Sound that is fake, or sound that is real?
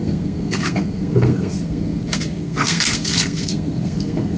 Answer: fake